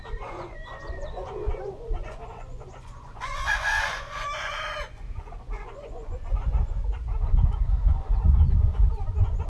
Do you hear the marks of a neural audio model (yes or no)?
yes